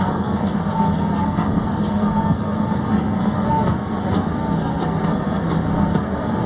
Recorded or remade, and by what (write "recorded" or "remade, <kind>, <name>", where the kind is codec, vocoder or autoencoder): remade, codec, SNAC